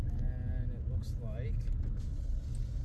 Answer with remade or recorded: recorded